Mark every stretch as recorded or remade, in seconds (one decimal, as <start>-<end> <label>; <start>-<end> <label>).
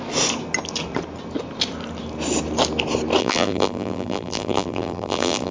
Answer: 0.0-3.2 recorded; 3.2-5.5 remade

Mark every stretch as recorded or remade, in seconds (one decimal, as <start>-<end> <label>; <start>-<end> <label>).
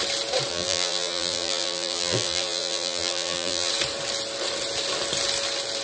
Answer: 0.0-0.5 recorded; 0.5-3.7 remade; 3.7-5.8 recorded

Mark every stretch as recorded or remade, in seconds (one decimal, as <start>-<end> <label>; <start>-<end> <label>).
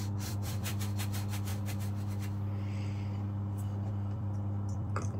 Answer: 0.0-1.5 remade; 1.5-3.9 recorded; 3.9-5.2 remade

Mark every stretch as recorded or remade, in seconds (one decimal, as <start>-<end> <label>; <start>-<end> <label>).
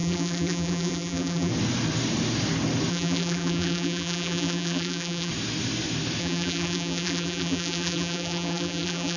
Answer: 0.0-1.5 remade; 1.5-2.9 recorded; 2.9-5.3 remade; 5.3-6.2 recorded; 6.2-9.2 remade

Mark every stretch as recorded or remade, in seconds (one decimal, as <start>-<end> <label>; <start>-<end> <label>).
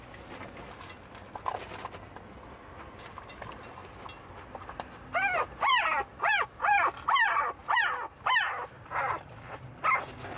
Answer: 0.0-7.6 recorded; 7.6-10.0 remade; 10.0-10.4 recorded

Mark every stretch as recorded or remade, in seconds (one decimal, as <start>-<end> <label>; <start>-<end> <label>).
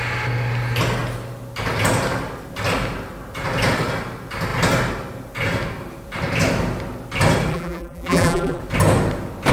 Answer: 0.0-7.5 recorded; 7.5-8.6 remade; 8.6-9.5 recorded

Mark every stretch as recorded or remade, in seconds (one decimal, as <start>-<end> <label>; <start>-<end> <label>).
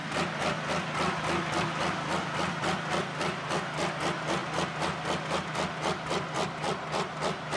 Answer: 0.0-7.6 recorded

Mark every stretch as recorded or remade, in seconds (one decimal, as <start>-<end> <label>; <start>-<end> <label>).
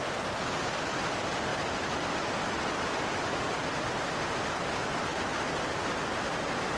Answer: 0.0-1.5 recorded; 1.5-2.8 remade; 2.8-6.8 recorded